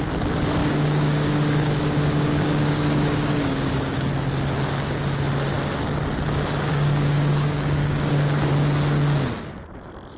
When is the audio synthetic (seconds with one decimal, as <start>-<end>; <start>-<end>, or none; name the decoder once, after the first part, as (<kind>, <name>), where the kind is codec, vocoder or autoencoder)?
0.6-4.1 (codec, DAC); 6.7-8.5